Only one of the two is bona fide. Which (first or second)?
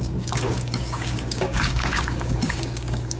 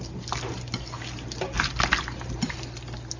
second